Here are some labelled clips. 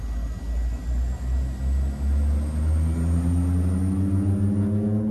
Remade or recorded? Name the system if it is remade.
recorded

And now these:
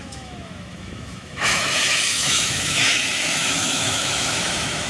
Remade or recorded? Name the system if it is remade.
remade, autoencoder, DAC-VAE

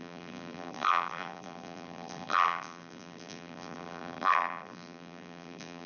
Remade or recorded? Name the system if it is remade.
remade, vocoder, BigVGAN v2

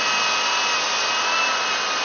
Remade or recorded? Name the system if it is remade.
recorded